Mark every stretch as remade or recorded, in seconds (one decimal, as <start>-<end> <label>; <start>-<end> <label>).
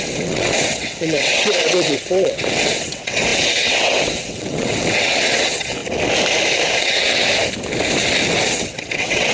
0.0-5.8 remade; 5.8-6.8 recorded; 6.8-7.3 remade; 7.3-8.5 recorded; 8.5-9.3 remade